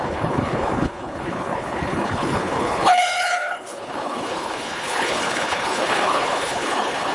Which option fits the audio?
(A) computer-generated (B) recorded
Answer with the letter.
A